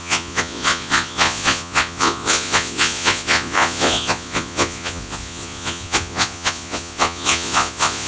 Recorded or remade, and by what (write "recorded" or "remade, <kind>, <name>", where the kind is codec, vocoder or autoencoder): remade, vocoder, Vocos